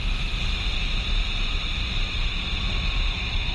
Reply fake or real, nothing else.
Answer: real